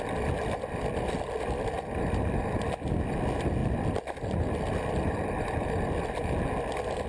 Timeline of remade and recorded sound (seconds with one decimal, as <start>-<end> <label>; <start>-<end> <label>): 0.0-7.1 recorded